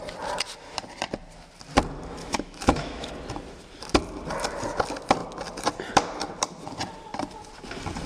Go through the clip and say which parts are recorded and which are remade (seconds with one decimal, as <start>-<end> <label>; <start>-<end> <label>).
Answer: 0.0-2.2 recorded; 2.2-3.1 remade; 3.1-8.1 recorded